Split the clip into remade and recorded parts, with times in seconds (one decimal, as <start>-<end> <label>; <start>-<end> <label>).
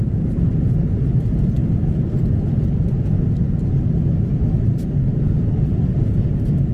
0.0-6.7 recorded